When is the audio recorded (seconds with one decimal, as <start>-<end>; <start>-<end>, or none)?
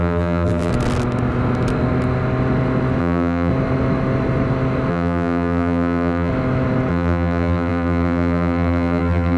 0.7-3.0; 3.5-4.9; 6.3-6.9